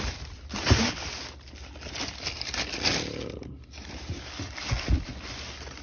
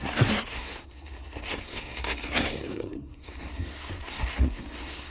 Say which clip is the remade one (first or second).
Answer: second